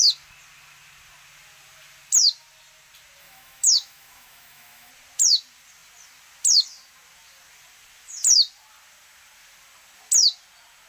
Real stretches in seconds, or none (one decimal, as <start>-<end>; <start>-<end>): 0.0-3.2; 4.9-10.9